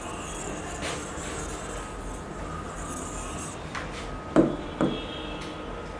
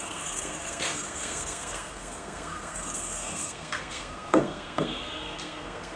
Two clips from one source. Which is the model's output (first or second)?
second